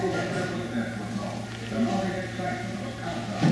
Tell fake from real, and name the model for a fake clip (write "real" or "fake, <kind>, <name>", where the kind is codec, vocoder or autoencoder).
real